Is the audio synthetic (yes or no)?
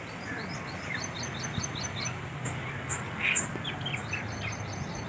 no